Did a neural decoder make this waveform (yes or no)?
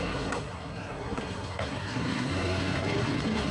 yes